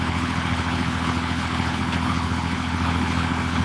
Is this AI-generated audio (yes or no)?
yes